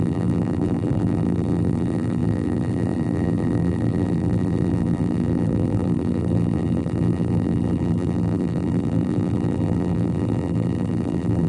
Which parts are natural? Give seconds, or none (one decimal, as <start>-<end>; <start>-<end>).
none